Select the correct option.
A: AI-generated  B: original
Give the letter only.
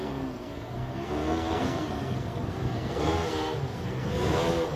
A